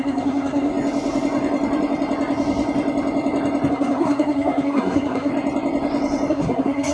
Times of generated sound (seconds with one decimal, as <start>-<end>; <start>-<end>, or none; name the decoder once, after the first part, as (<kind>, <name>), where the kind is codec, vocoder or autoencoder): 0.0-0.7 (codec, SNAC); 3.7-5.3; 6.3-6.9

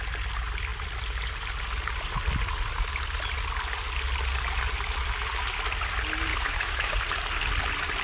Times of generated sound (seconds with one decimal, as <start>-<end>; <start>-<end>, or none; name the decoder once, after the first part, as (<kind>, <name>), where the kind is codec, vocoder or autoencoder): 6.3-6.9 (autoencoder, DAC-VAE)

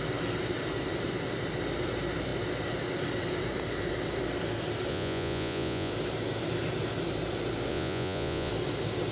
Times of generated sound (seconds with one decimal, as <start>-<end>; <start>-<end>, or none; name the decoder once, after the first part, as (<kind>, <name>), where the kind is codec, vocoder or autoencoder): 4.9-5.9 (vocoder, Vocos); 7.7-8.5